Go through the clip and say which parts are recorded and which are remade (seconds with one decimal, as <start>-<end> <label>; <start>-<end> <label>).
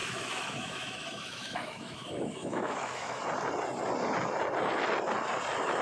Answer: 0.0-3.2 remade; 3.2-5.8 recorded